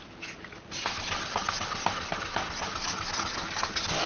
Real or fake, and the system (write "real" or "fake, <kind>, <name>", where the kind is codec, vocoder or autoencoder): real